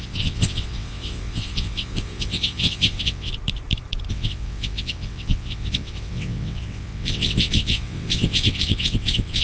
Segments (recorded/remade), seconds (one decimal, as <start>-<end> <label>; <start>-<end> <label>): 0.0-3.3 remade; 3.3-4.1 recorded; 4.1-9.4 remade